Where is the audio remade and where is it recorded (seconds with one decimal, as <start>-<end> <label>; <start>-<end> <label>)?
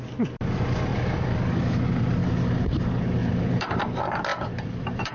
0.0-0.9 recorded; 0.9-1.8 remade; 1.8-2.2 recorded; 2.2-2.8 remade; 2.8-3.2 recorded; 3.2-3.8 remade; 3.8-4.3 recorded; 4.3-5.1 remade